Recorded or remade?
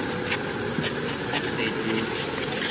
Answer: recorded